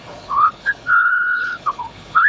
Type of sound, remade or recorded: remade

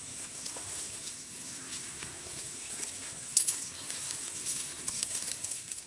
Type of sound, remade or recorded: remade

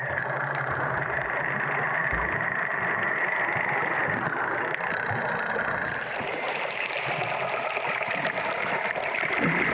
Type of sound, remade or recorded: recorded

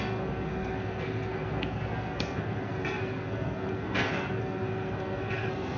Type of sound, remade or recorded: remade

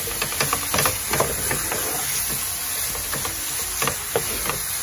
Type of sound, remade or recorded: recorded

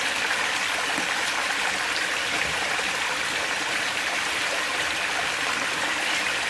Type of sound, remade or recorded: remade